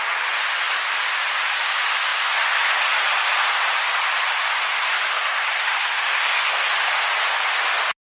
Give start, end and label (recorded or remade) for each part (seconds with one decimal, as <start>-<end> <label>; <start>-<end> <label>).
0.0-5.1 recorded; 5.1-6.7 remade; 6.7-8.1 recorded